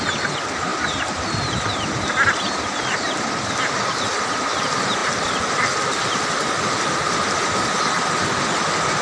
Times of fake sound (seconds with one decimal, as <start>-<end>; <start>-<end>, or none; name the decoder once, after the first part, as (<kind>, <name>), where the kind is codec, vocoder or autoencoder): 0.7-3.3 (vocoder, BigVGAN v2)